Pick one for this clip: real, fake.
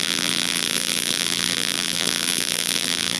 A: fake